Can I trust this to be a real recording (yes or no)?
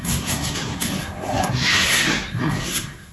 no